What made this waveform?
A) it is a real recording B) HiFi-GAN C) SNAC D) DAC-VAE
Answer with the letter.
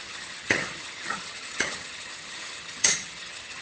B